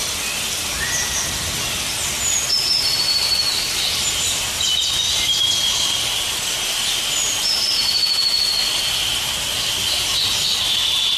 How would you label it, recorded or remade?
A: recorded